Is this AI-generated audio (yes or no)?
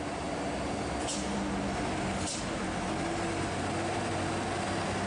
no